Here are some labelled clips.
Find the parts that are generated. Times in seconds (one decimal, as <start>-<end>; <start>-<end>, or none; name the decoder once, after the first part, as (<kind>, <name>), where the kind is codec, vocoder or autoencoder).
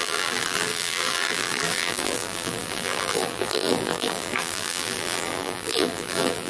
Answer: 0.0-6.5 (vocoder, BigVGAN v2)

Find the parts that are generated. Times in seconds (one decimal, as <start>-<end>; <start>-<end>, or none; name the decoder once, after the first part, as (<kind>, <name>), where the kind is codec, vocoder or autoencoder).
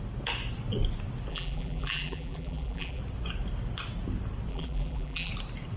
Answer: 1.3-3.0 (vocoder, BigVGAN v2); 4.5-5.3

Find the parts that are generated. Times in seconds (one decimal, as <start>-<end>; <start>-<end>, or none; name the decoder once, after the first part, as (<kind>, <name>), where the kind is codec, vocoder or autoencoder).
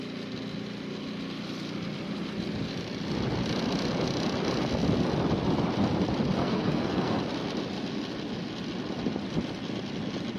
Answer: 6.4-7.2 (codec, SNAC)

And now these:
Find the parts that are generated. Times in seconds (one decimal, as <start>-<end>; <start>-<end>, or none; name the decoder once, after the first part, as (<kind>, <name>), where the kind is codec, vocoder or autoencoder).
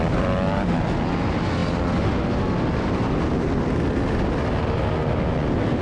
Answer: none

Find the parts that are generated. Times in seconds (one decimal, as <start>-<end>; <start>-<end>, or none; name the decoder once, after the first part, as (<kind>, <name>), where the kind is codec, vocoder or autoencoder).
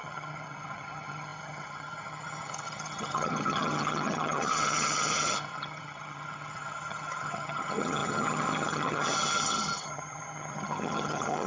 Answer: 0.0-11.5 (vocoder, HiFi-GAN)